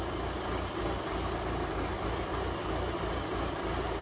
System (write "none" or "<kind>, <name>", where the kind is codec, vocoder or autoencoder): none